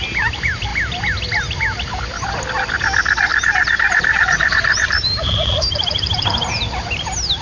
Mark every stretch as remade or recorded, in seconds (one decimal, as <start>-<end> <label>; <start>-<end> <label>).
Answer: 0.0-3.3 recorded; 3.3-6.6 remade; 6.6-7.4 recorded